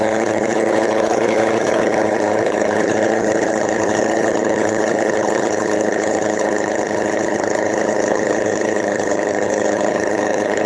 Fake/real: fake